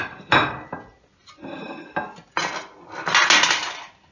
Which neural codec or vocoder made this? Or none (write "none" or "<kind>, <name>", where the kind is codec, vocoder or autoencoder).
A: none